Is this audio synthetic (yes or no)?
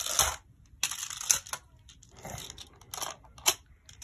no